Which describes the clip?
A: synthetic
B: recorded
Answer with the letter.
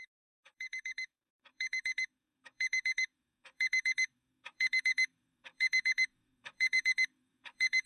A